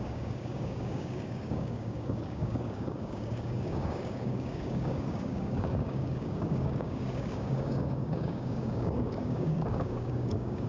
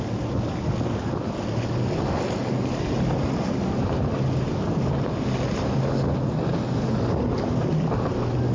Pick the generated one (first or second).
first